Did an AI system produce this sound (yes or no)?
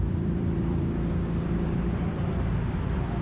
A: yes